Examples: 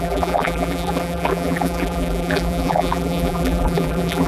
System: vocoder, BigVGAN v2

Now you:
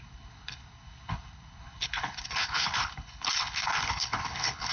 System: codec, HILCodec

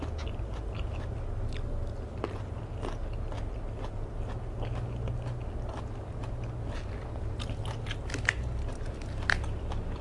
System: none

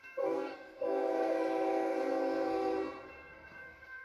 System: codec, SNAC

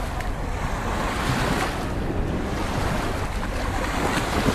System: none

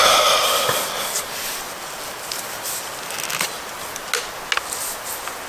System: none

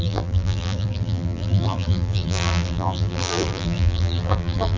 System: vocoder, BigVGAN v2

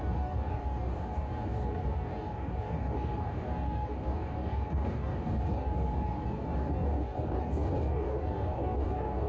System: codec, DAC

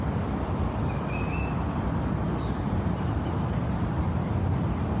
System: none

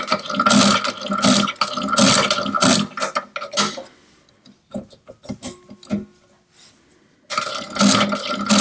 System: none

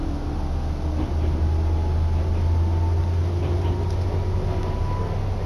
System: none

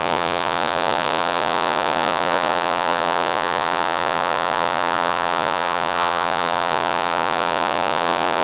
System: vocoder, Vocos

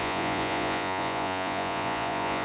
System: vocoder, Vocos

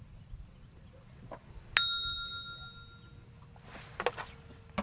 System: none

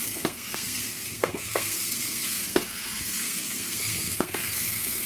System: codec, SNAC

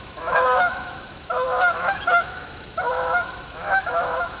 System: autoencoder, DAC-VAE